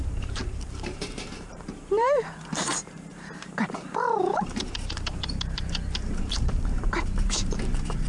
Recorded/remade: remade